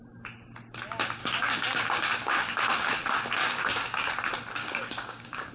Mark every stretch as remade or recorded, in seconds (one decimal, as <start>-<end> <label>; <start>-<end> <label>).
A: 0.0-1.2 recorded; 1.2-3.0 remade; 3.0-3.4 recorded; 3.4-4.1 remade; 4.1-4.6 recorded; 4.6-5.5 remade